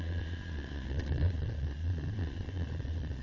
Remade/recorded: remade